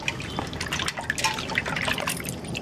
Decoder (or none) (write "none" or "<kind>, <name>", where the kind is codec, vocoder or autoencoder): none